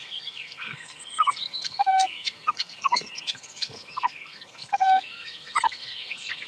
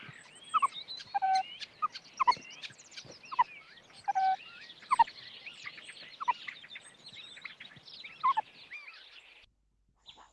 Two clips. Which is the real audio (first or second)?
second